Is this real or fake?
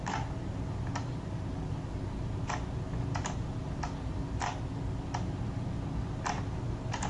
real